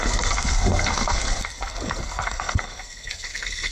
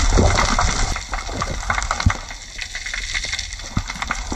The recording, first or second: second